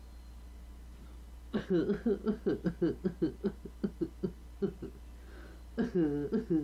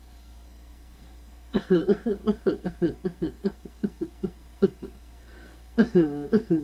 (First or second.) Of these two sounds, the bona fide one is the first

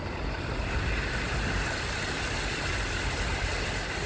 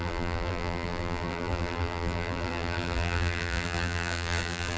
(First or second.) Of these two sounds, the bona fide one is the first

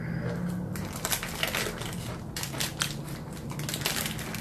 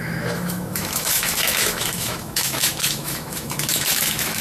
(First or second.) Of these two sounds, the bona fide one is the first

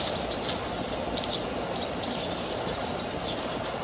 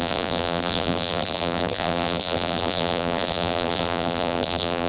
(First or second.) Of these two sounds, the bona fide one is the first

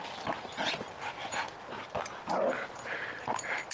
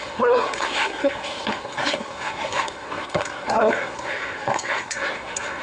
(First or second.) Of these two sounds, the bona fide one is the first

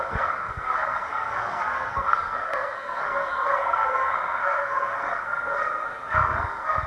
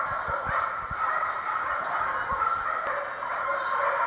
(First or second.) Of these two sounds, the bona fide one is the second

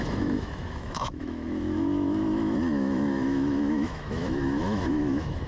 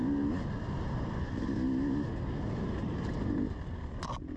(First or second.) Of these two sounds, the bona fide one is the second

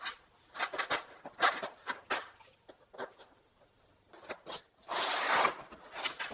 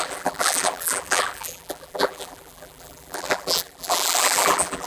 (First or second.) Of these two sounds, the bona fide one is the first